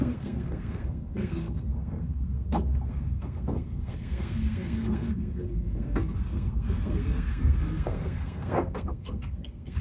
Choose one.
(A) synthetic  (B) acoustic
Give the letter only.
A